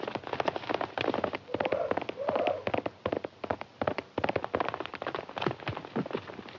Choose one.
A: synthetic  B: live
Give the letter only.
B